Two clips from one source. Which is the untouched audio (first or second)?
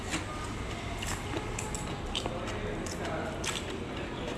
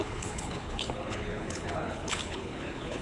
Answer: first